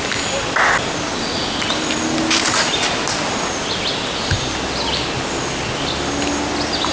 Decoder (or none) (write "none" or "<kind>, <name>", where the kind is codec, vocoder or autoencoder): none